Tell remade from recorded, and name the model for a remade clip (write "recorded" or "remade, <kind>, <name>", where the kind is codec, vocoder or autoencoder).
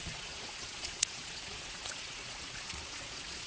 remade, vocoder, Vocos